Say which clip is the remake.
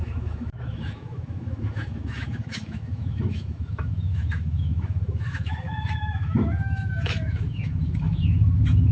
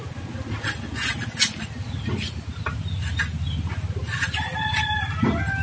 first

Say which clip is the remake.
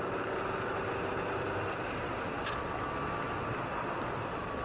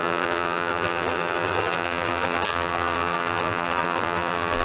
second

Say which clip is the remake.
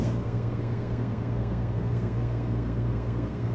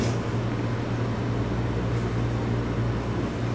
first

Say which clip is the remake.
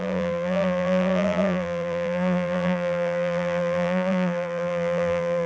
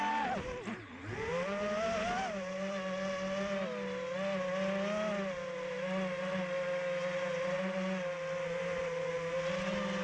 first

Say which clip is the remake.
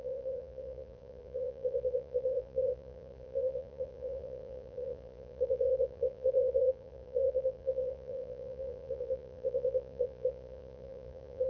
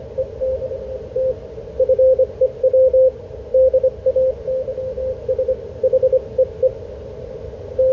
first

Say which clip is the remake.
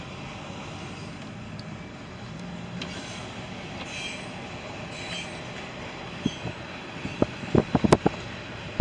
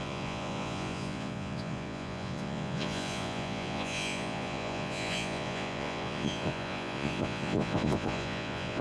second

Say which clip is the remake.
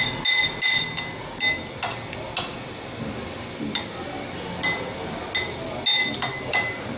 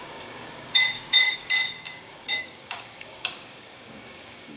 second